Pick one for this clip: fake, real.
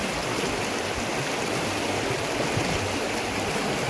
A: real